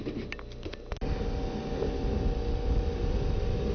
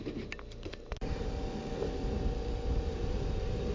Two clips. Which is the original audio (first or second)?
first